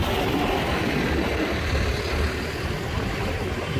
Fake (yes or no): no